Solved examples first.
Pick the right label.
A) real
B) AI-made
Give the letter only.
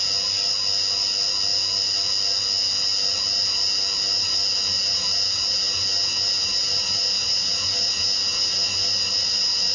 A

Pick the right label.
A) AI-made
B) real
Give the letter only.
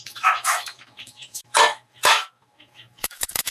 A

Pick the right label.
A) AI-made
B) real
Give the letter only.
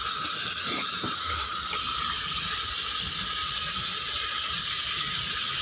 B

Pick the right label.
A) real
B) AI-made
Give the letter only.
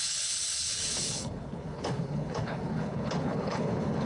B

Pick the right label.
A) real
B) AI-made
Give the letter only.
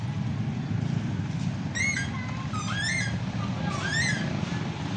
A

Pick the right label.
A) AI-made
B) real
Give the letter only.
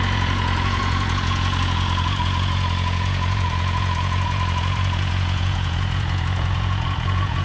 A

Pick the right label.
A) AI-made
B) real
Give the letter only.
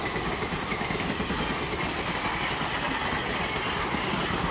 B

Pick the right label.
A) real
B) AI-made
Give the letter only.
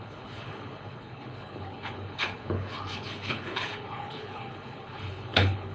B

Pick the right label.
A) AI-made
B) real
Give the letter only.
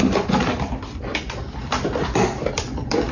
A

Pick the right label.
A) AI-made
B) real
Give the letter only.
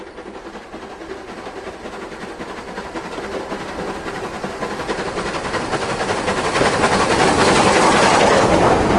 B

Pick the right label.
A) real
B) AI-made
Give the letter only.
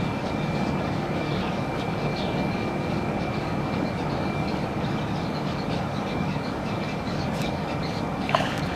B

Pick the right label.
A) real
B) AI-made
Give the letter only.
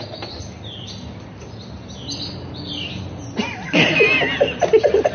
A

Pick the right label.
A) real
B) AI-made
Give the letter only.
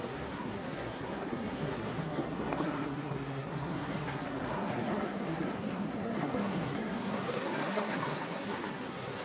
B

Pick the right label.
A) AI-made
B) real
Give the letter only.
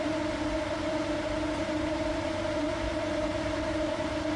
A